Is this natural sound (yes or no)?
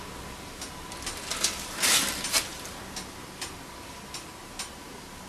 yes